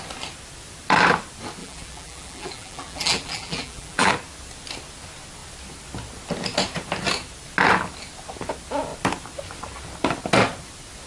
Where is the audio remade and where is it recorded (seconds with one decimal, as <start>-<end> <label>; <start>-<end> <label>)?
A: 0.0-1.6 recorded; 1.6-4.1 remade; 4.1-11.1 recorded